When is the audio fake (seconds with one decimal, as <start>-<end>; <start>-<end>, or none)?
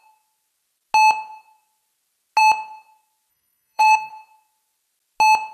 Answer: 3.3-4.1